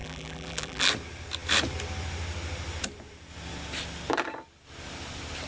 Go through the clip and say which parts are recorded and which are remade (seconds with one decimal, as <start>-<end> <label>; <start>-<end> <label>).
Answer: 0.0-0.9 remade; 0.9-5.5 recorded